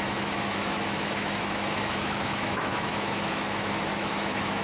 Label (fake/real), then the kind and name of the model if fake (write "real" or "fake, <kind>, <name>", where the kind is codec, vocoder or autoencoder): fake, autoencoder, DAC-VAE